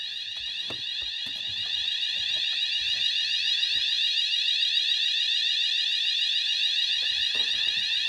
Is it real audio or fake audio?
real